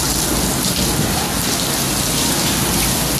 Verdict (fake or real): real